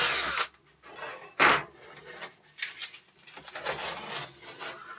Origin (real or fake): real